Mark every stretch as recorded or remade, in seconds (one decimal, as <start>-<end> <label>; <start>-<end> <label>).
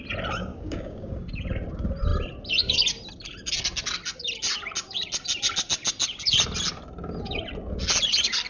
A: 0.0-0.4 recorded; 0.4-1.1 remade; 1.1-8.5 recorded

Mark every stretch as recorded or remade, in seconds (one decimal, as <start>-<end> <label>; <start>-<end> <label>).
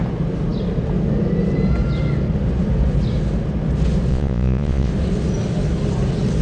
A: 0.0-4.1 recorded; 4.1-4.9 remade; 4.9-6.4 recorded